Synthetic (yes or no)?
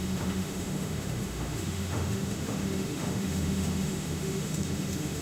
yes